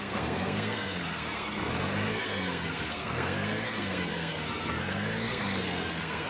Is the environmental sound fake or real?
fake